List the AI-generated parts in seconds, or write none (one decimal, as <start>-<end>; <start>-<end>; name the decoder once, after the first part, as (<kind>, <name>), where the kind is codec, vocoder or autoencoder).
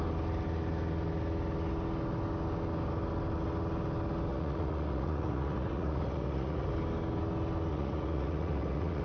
4.3-6.7 (vocoder, Vocos); 7.7-9.0